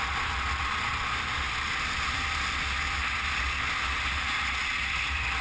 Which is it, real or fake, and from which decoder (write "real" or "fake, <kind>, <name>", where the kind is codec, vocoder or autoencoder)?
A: real